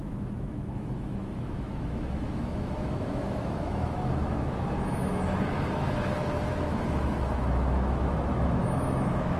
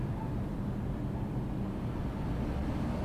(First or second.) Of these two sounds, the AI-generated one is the first